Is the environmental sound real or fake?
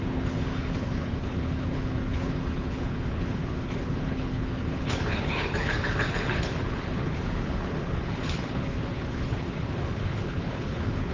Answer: fake